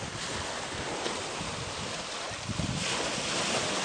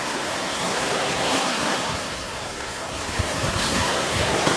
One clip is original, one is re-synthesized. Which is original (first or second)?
first